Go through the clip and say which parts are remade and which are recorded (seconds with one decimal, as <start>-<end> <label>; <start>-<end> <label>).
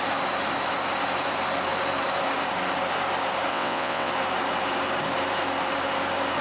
0.0-3.5 recorded; 3.5-4.1 remade; 4.1-6.4 recorded